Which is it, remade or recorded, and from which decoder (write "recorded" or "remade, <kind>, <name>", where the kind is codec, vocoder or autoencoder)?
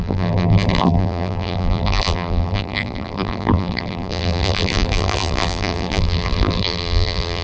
remade, vocoder, BigVGAN v2